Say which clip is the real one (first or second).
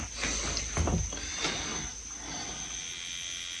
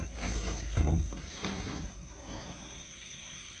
first